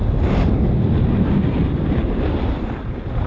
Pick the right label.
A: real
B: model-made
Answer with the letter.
A